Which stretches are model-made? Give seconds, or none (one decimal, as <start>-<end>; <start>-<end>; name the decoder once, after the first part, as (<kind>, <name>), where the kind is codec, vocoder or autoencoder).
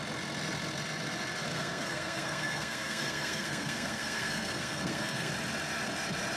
1.5-5.3 (codec, SNAC)